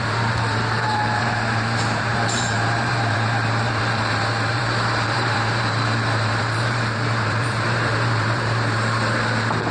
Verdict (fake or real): fake